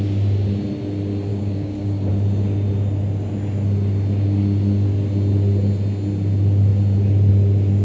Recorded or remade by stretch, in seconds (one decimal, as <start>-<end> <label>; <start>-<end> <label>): 0.0-1.3 recorded; 1.3-2.1 remade; 2.1-7.8 recorded